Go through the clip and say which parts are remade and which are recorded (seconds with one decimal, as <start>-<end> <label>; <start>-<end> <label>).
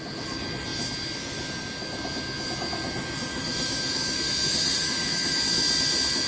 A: 0.0-3.3 recorded; 3.3-5.4 remade; 5.4-6.3 recorded